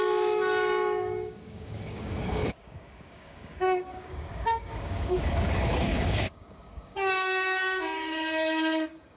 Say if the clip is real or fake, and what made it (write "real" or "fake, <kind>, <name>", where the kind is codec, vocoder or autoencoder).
fake, codec, DAC